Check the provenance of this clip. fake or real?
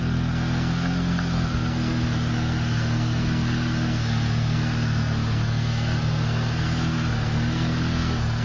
fake